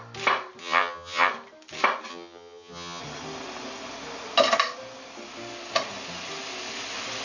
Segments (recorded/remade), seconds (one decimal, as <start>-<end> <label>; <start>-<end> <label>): 0.0-0.6 recorded; 0.6-1.3 remade; 1.3-2.1 recorded; 2.1-3.0 remade; 3.0-7.2 recorded